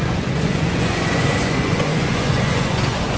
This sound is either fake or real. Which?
fake